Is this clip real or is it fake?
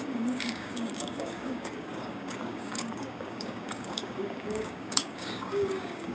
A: fake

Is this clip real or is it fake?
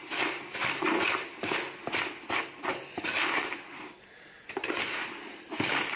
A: real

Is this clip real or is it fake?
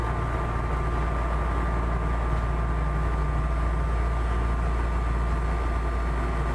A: real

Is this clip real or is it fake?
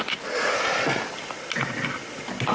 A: real